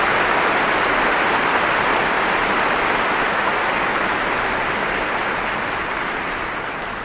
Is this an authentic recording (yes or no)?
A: yes